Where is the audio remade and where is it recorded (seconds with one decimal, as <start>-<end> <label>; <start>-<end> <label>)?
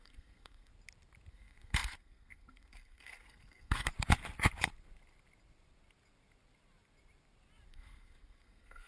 0.0-0.7 remade; 0.7-1.3 recorded; 1.3-3.9 remade; 3.9-7.7 recorded; 7.7-8.9 remade